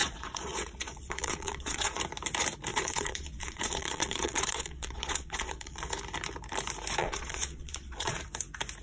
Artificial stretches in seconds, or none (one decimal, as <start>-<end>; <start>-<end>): 0.0-2.0; 2.7-5.9; 7.0-8.2